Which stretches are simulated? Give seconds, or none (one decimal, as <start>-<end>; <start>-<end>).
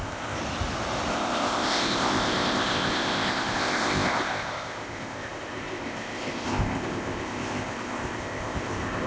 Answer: 0.0-0.4; 1.1-9.1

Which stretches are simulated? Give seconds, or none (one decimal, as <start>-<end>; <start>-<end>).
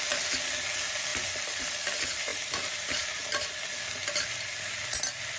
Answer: none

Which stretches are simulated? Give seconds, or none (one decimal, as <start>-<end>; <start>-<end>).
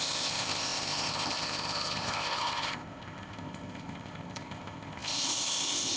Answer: 0.0-6.0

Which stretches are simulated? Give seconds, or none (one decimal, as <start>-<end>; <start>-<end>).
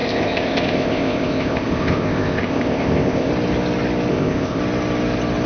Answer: 0.0-3.3; 4.1-4.6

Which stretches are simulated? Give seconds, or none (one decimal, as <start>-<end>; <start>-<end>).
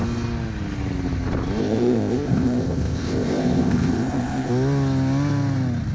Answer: 1.6-4.5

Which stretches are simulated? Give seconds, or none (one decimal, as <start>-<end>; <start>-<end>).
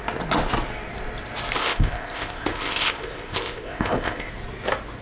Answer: 1.6-4.3